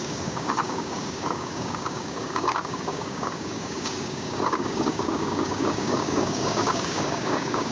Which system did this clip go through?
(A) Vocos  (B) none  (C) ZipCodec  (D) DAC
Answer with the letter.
D